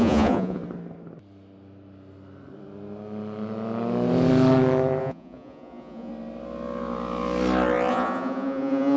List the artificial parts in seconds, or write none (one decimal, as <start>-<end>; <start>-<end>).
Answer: 0.0-0.6; 5.0-6.1; 7.9-9.0